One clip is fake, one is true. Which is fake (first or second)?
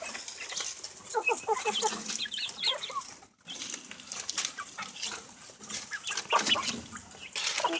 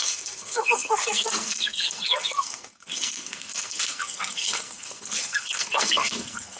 second